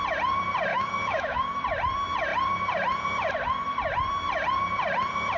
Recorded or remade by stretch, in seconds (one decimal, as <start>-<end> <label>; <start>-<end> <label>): 0.0-0.7 recorded; 0.7-1.6 remade; 1.6-5.4 recorded